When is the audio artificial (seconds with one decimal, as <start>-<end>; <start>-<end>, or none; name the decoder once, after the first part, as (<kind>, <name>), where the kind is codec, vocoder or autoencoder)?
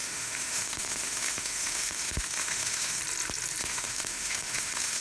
0.0-3.0 (autoencoder, DAC-VAE); 3.6-5.0